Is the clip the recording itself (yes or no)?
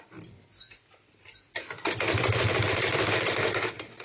yes